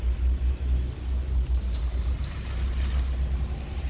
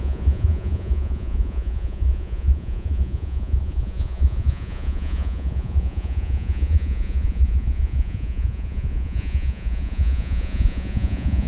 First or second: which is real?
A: first